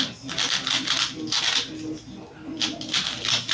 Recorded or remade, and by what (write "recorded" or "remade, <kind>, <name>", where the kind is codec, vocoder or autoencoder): recorded